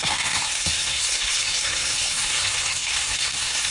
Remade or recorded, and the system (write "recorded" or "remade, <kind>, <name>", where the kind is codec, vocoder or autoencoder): remade, codec, SNAC